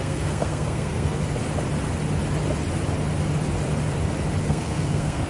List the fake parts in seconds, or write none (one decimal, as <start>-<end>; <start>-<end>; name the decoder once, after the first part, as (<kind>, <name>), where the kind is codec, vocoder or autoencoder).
0.0-1.2 (codec, SNAC); 4.4-5.3